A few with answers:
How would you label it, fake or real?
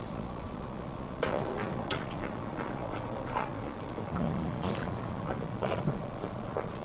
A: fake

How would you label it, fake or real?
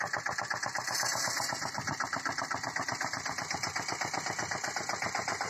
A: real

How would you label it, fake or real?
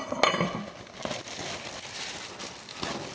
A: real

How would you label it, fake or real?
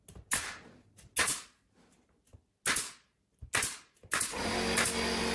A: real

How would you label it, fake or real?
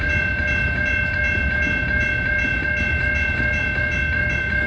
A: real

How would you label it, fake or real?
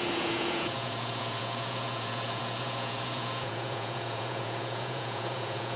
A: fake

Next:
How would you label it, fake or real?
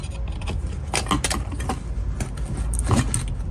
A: real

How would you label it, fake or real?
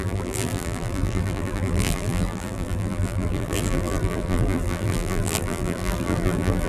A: fake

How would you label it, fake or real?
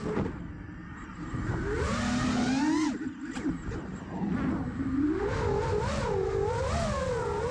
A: real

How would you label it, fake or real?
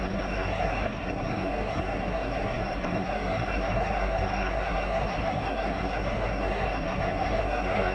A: fake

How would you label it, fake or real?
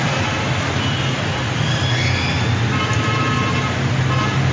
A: real